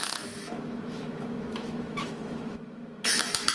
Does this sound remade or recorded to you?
remade